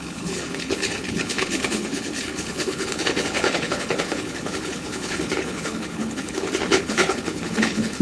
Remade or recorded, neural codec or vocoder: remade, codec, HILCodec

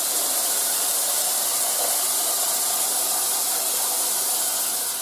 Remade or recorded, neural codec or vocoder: recorded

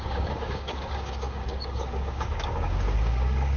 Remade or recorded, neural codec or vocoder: remade, codec, DAC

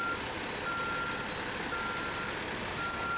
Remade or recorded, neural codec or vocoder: recorded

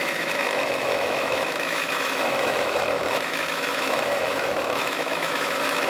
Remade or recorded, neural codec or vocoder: remade, autoencoder, DAC-VAE